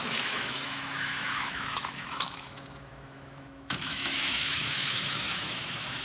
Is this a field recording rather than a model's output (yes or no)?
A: no